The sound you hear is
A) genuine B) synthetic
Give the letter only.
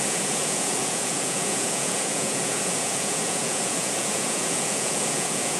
B